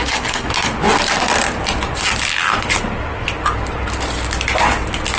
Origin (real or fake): real